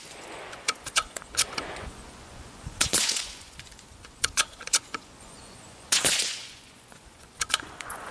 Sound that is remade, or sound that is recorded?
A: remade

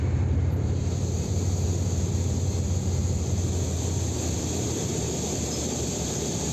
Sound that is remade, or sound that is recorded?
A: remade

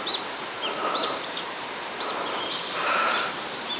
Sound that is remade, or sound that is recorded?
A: remade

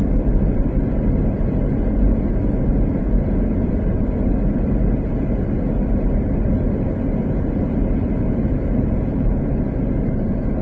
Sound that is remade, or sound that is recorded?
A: recorded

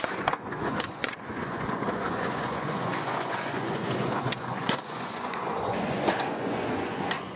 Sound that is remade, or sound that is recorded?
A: remade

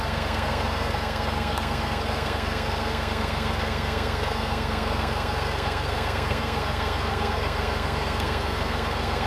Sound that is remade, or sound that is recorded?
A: remade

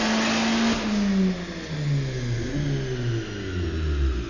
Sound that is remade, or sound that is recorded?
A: recorded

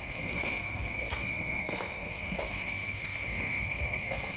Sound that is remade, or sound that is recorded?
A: remade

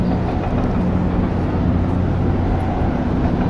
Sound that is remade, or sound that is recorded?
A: recorded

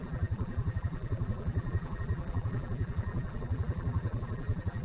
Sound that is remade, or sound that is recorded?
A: remade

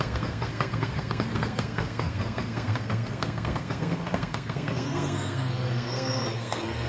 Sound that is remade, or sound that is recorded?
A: remade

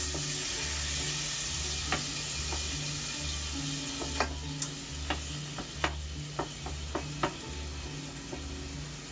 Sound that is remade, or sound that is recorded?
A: recorded